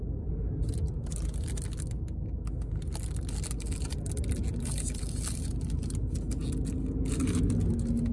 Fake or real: real